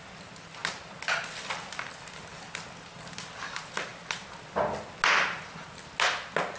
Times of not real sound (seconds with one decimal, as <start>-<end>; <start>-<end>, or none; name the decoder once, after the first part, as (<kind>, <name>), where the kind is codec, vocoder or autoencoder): none